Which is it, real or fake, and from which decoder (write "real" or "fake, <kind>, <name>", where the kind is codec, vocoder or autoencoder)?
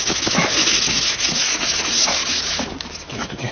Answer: fake, autoencoder, DAC-VAE